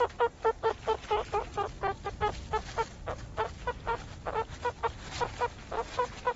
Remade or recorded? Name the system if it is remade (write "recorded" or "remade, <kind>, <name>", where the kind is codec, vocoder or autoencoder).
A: recorded